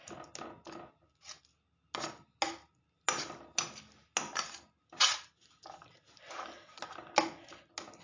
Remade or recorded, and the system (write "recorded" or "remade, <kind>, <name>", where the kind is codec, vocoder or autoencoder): recorded